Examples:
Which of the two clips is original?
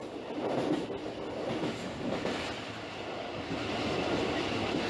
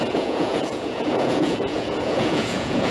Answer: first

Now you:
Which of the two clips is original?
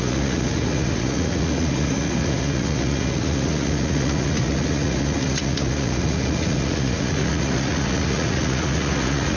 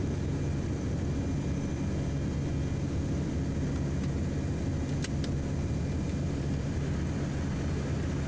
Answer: second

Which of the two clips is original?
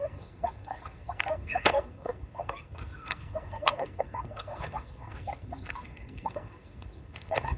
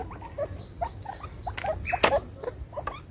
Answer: second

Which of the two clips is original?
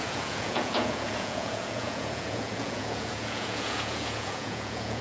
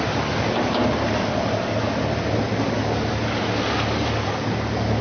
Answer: second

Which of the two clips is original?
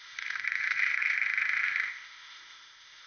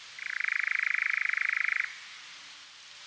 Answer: second